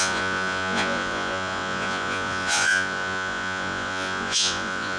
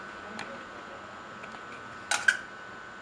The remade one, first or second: first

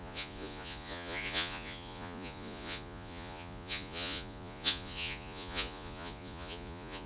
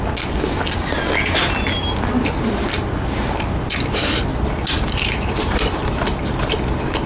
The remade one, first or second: first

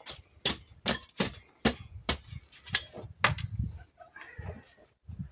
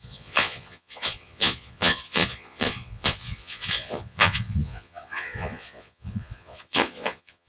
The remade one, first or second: second